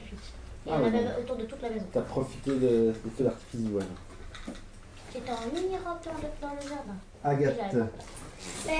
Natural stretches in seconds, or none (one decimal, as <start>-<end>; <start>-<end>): 0.0-8.8